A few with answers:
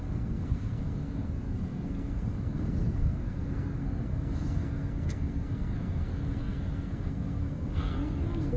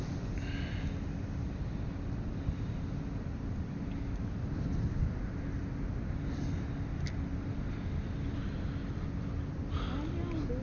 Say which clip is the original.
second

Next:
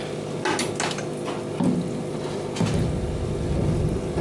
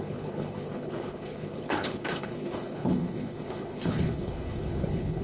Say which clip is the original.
first